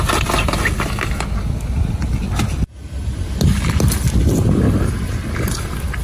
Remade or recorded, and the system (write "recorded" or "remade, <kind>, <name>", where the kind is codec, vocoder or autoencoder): recorded